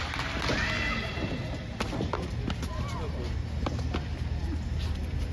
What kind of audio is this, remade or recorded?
recorded